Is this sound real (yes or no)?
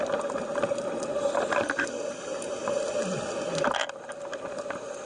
yes